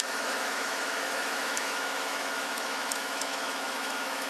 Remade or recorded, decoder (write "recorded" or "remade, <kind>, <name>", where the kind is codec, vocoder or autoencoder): remade, autoencoder, DAC-VAE